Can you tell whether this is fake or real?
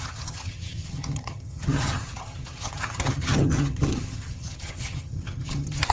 fake